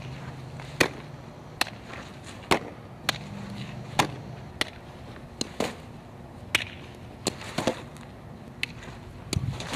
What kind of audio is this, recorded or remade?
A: recorded